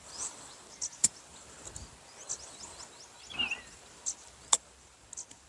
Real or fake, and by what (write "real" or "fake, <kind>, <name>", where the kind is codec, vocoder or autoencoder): real